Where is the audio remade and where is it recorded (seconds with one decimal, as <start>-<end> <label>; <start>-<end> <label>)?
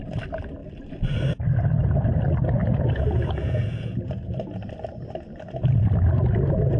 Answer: 0.0-2.6 recorded; 2.6-4.3 remade; 4.3-6.8 recorded